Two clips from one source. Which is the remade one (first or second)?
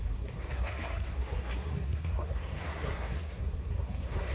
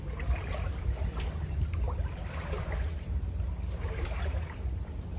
first